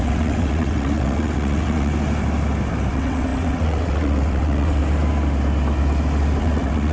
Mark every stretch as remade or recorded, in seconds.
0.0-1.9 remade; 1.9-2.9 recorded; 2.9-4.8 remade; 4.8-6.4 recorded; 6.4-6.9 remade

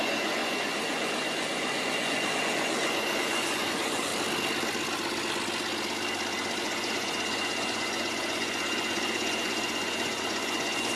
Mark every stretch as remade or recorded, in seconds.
0.0-4.1 remade; 4.1-6.6 recorded; 6.6-11.0 remade

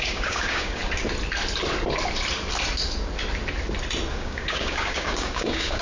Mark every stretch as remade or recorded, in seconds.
0.0-0.8 remade; 0.8-4.1 recorded; 4.1-5.8 remade

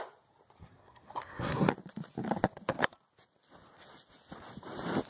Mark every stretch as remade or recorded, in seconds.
0.0-0.6 recorded; 0.6-1.7 remade; 1.7-5.1 recorded

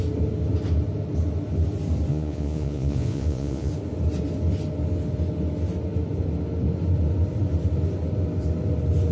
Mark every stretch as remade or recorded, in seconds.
0.0-2.1 recorded; 2.1-3.7 remade; 3.7-9.1 recorded